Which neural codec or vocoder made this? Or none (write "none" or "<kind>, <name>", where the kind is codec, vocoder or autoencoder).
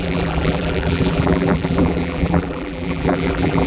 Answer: vocoder, BigVGAN v2